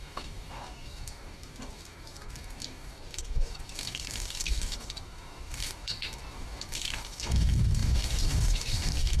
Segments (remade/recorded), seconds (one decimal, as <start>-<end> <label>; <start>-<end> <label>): 0.0-9.2 remade